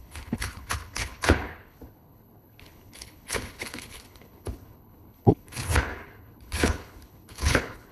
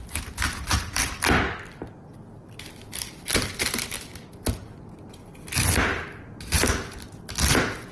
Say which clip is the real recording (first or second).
second